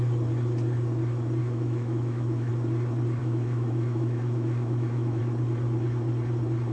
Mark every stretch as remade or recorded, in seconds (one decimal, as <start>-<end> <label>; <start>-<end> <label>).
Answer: 0.0-1.4 recorded; 1.4-2.5 remade; 2.5-3.2 recorded; 3.2-5.2 remade; 5.2-6.7 recorded